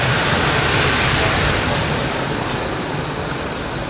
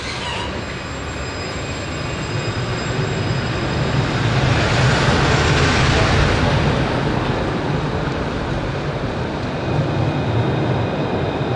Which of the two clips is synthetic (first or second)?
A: first